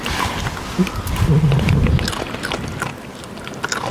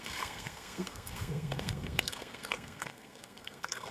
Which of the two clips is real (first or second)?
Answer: first